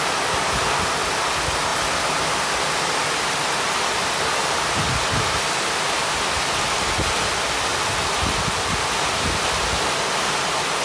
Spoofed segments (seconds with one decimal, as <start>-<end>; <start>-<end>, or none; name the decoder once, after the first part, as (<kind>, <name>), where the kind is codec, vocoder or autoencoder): none